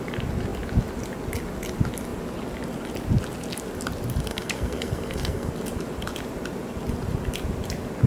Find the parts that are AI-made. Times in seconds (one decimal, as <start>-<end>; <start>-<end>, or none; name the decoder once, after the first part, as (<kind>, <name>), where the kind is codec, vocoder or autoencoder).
4.3-5.5 (codec, SNAC)